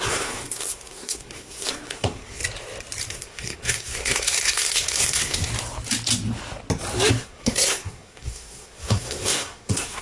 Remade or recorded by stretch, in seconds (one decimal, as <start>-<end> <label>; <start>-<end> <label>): 0.0-2.4 remade; 2.4-3.1 recorded; 3.1-5.5 remade; 5.5-7.1 recorded; 7.1-10.0 remade